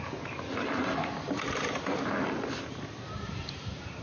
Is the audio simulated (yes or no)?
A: no